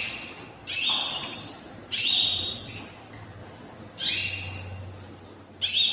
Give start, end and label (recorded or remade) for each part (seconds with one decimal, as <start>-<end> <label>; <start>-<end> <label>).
0.0-1.9 recorded; 1.9-2.8 remade; 2.8-5.9 recorded